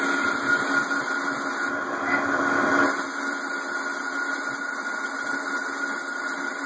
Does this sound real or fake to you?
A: real